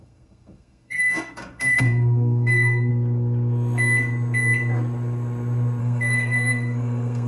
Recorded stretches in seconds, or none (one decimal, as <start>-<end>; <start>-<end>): 2.9-5.8